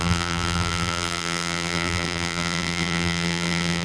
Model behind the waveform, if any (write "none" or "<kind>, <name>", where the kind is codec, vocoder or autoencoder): vocoder, BigVGAN v2